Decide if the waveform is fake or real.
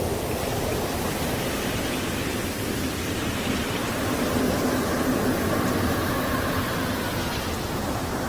real